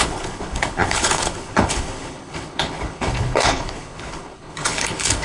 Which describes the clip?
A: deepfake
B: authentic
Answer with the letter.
A